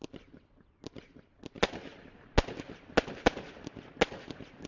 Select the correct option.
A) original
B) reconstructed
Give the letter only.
A